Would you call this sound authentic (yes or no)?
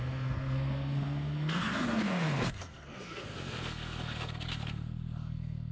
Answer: no